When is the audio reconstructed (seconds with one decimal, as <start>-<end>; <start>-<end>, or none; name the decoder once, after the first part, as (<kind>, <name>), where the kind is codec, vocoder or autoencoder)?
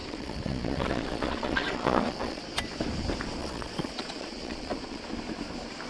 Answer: 0.0-2.4 (vocoder, Vocos); 3.4-5.0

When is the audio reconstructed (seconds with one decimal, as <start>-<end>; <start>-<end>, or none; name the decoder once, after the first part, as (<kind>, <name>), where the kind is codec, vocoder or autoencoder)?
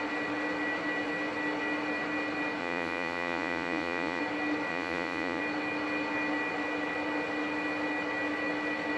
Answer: 2.6-4.2 (vocoder, Vocos); 4.7-5.4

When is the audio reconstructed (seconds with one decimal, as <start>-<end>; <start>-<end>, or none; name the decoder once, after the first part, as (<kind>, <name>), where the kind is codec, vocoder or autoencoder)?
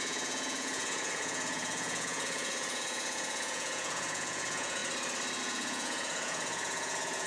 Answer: 0.0-4.8 (vocoder, Vocos); 5.4-7.3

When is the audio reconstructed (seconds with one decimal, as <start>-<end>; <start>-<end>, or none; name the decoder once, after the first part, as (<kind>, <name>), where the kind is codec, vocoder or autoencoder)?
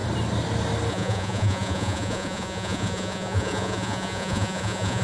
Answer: 0.9-5.0 (vocoder, Vocos)